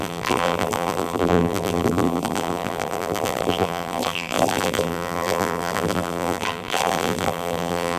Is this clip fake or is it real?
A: fake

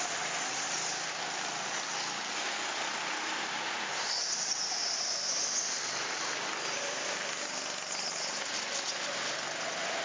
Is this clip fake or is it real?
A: real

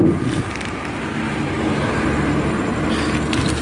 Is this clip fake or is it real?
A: real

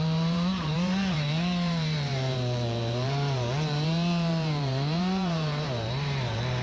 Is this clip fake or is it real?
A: fake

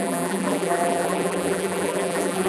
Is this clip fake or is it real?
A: fake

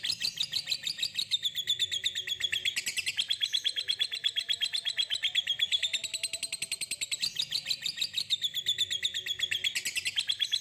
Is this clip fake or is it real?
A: real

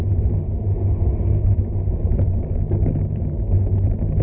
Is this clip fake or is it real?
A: real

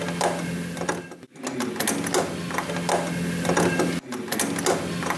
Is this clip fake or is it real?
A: real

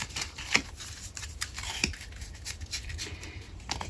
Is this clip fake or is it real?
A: fake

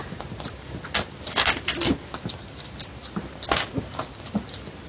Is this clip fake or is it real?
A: real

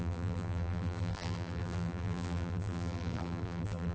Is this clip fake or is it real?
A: fake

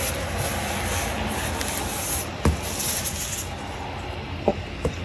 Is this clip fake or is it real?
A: real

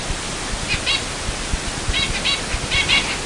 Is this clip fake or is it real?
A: real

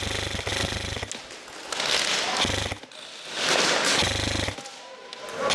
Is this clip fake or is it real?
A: real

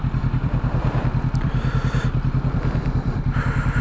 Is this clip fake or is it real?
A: fake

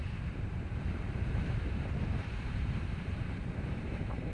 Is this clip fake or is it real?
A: fake